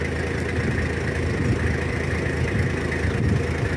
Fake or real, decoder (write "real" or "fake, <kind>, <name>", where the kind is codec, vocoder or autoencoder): real